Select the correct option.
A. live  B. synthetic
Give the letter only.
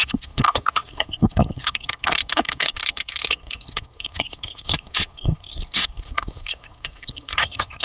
B